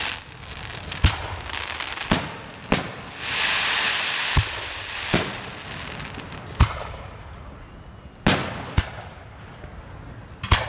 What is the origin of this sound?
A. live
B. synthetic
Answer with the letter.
A